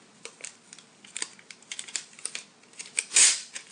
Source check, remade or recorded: recorded